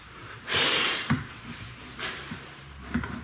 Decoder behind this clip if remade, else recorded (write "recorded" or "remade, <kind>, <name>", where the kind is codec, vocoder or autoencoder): remade, vocoder, BigVGAN v2